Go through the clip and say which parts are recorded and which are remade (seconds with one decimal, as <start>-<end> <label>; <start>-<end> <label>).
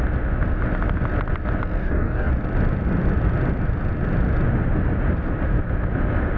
0.0-1.8 recorded; 1.8-2.3 remade; 2.3-6.4 recorded